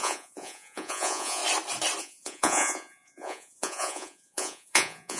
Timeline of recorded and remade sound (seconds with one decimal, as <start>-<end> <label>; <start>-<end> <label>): 0.0-1.4 remade; 1.4-2.0 recorded; 2.0-5.2 remade